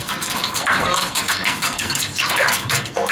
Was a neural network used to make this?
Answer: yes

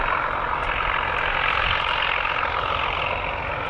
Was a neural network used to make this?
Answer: no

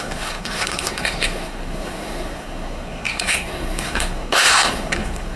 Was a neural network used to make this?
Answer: yes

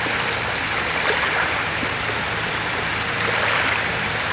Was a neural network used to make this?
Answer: no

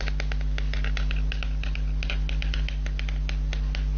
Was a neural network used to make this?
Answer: no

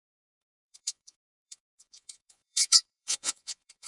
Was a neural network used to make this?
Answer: yes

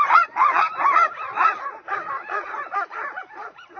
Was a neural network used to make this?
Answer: yes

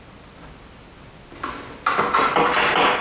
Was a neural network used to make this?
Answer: no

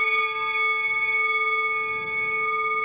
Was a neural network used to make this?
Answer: no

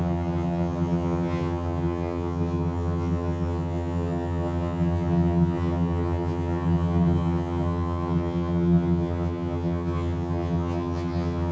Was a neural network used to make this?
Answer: yes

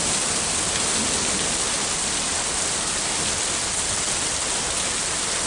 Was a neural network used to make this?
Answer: no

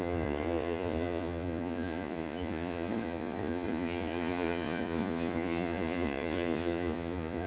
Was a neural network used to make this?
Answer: yes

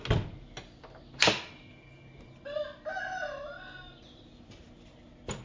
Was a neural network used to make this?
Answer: no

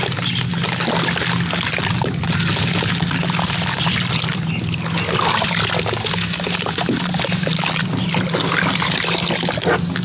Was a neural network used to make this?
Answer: no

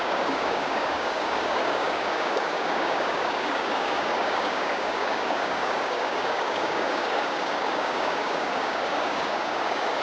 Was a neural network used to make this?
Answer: yes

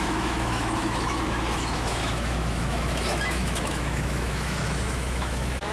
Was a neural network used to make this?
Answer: yes